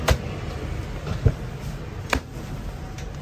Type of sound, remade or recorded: recorded